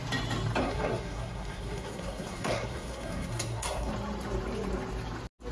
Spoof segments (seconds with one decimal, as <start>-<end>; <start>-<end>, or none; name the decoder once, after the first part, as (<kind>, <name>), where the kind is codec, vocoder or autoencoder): 0.6-3.9 (codec, SNAC)